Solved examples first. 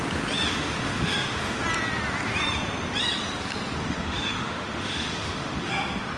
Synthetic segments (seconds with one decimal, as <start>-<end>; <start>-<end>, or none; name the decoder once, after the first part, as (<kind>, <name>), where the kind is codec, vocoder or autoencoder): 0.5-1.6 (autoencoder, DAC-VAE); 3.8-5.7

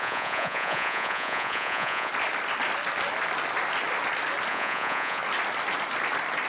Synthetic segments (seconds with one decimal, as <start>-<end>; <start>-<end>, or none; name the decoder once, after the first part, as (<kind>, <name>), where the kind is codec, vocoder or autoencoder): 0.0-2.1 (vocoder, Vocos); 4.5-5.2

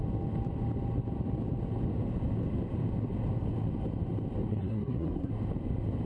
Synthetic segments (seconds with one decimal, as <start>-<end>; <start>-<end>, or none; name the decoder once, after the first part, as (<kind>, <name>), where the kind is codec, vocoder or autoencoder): 4.5-5.3 (codec, SNAC)

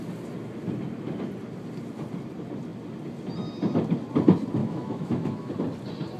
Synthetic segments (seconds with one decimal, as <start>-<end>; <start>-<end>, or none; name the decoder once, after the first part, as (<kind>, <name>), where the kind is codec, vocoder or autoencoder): 4.6-5.5 (autoencoder, DAC-VAE)

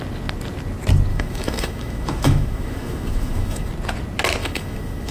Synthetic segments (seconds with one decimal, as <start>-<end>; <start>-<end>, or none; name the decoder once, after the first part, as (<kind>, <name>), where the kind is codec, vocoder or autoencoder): 1.1-3.7 (autoencoder, DAC-VAE); 4.4-5.1

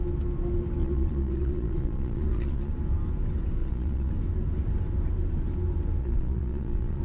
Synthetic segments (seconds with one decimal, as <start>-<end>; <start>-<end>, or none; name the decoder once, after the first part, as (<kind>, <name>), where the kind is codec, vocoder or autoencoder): 0.8-2.7 (vocoder, Vocos); 3.6-4.1; 6.0-7.0

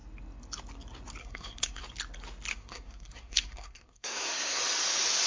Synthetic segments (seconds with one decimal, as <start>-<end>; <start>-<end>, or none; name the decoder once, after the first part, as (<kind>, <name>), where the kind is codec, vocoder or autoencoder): 1.2-1.8 (codec, SNAC); 2.5-4.6

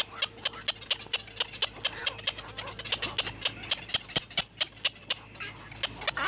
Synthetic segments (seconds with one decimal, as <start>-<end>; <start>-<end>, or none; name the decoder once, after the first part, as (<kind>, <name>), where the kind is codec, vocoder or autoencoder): none